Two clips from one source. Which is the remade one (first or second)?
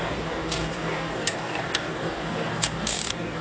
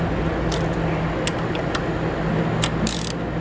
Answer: first